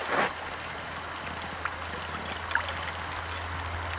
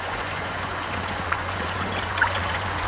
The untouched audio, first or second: first